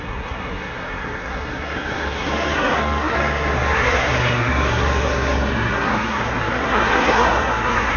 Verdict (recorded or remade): remade